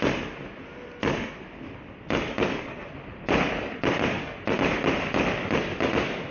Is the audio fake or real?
real